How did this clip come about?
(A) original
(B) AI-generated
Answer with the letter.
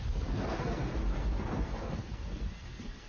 B